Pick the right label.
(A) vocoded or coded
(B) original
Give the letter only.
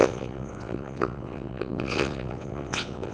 A